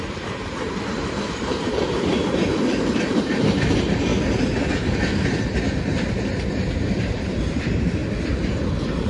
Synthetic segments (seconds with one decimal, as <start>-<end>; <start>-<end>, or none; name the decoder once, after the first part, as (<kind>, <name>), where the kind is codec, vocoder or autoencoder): 0.0-4.1 (vocoder, BigVGAN v2); 7.0-8.0

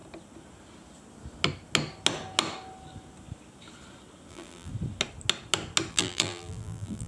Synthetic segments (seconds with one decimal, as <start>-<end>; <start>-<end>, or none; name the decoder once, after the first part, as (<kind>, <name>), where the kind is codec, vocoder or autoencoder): 4.3-4.7 (vocoder, BigVGAN v2); 5.9-7.1

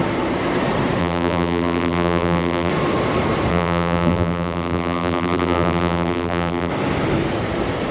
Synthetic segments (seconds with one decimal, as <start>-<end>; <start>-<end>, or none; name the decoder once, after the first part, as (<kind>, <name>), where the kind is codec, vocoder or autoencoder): 1.0-2.7 (vocoder, BigVGAN v2); 3.5-6.7

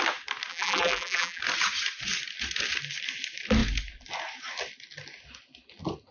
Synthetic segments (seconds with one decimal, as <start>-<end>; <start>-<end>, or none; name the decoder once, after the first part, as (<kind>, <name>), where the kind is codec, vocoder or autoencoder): 0.5-1.4 (vocoder, BigVGAN v2)